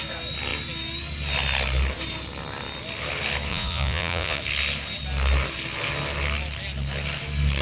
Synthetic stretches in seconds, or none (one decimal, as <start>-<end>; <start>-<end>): 3.5-4.4